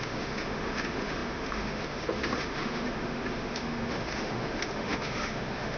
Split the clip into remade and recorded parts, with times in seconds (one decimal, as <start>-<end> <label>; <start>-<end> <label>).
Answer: 0.0-5.8 remade